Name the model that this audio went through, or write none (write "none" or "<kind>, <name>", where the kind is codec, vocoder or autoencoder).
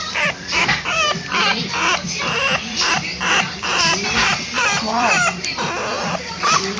vocoder, BigVGAN v2